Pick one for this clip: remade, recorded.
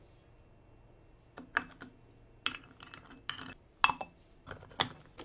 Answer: recorded